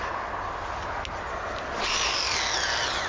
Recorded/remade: recorded